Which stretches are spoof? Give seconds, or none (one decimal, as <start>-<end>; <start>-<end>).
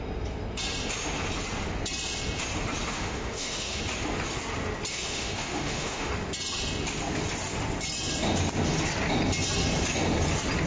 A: 2.9-3.8; 4.9-6.1